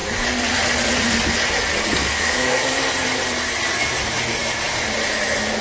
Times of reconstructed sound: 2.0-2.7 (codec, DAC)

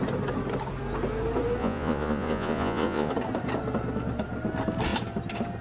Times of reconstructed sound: 1.6-3.1 (vocoder, Vocos)

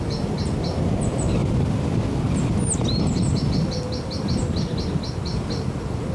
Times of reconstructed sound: none

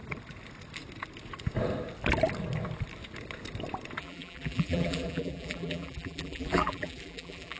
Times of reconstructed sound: 4.0-7.6 (vocoder, BigVGAN v2)

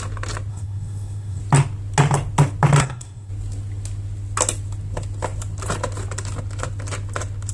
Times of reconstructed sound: 0.5-1.4 (codec, SNAC); 2.8-3.3